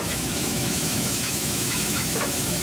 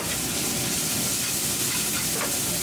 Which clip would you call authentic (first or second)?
second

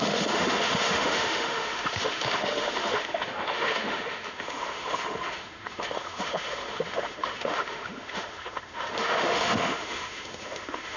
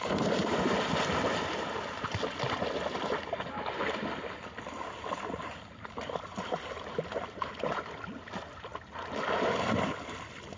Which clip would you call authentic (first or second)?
second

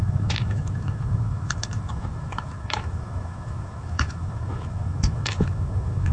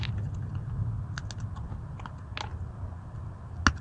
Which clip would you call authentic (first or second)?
second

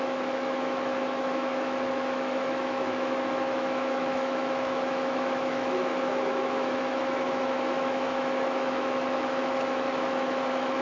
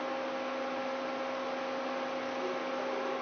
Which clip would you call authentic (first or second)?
second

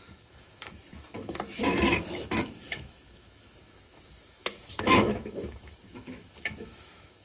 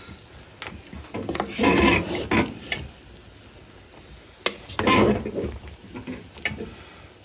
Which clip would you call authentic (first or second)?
second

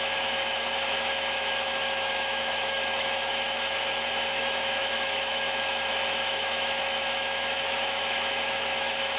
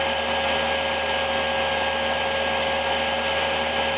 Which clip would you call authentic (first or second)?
second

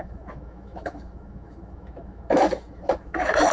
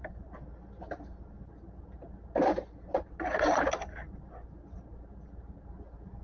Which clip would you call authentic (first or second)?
second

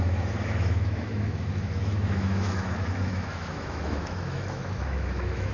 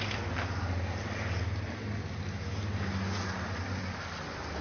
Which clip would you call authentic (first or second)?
second